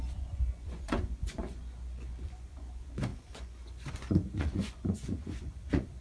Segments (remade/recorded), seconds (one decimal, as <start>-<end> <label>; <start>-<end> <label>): 0.0-6.0 remade